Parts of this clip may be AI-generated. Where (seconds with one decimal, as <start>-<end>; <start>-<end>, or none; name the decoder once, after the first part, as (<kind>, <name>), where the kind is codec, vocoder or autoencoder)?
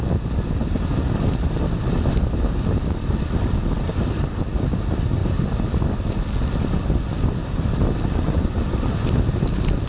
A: 5.2-6.2 (vocoder, BigVGAN v2); 7.4-8.2